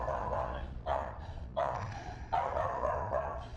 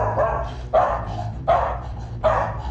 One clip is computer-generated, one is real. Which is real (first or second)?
second